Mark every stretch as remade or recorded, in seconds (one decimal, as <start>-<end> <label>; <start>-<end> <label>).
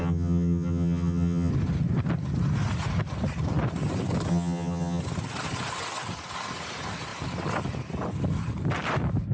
0.0-1.5 remade; 1.5-4.3 recorded; 4.3-5.0 remade; 5.0-9.3 recorded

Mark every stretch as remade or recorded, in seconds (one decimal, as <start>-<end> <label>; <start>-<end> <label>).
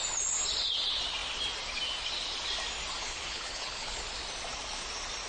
0.0-3.0 recorded; 3.0-4.0 remade; 4.0-5.3 recorded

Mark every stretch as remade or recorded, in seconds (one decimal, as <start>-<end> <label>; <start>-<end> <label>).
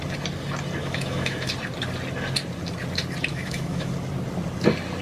0.0-0.8 recorded; 0.8-1.5 remade; 1.5-3.3 recorded; 3.3-3.9 remade; 3.9-5.0 recorded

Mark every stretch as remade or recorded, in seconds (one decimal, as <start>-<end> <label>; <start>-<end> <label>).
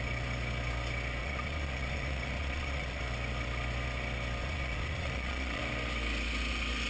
0.0-1.2 recorded; 1.2-3.0 remade; 3.0-4.4 recorded; 4.4-5.6 remade; 5.6-6.9 recorded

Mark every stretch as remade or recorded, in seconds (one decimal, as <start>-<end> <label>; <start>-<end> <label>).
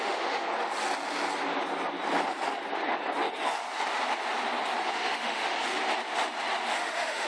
0.0-0.5 remade; 0.5-4.9 recorded; 4.9-5.7 remade; 5.7-6.7 recorded; 6.7-7.3 remade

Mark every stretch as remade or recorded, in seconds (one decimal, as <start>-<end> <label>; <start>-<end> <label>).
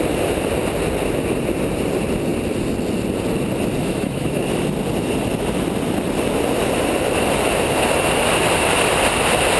0.0-3.8 recorded; 3.8-4.4 remade; 4.4-9.6 recorded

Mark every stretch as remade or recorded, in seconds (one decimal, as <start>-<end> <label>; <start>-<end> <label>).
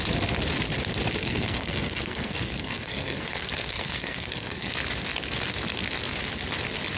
0.0-1.2 recorded; 1.2-4.7 remade; 4.7-7.0 recorded